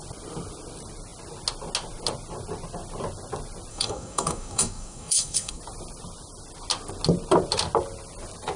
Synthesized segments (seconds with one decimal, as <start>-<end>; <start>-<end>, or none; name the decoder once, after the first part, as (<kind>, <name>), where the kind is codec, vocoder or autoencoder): 3.7-5.6 (codec, DAC)